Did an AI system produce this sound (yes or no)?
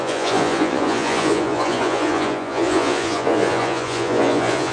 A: yes